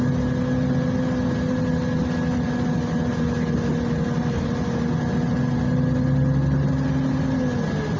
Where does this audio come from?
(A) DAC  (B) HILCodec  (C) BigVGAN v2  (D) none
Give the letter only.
D